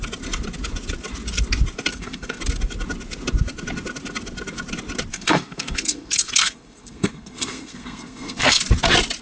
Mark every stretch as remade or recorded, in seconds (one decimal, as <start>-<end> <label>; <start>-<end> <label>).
0.0-1.9 recorded; 1.9-2.4 remade; 2.4-5.1 recorded; 5.1-8.6 remade; 8.6-9.2 recorded